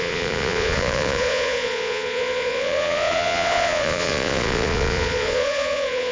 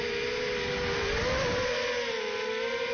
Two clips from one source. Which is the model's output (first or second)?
first